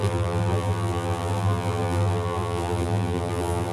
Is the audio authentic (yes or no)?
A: no